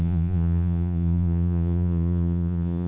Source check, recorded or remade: remade